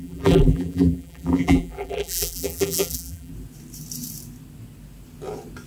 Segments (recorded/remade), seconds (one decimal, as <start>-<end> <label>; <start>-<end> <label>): 0.0-3.3 remade; 3.3-5.7 recorded

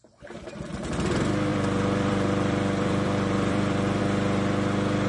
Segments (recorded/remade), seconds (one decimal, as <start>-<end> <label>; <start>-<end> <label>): 0.0-1.5 recorded; 1.5-4.0 remade; 4.0-5.1 recorded